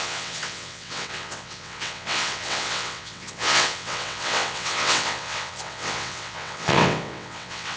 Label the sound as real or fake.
fake